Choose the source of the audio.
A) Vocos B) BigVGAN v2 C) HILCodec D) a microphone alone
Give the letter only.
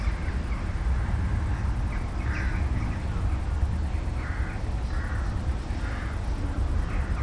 D